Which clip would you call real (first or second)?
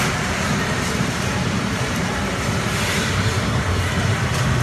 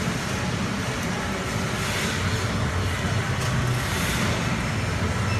second